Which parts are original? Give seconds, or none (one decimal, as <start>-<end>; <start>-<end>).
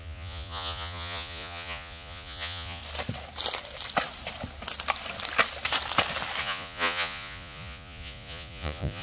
2.8-6.4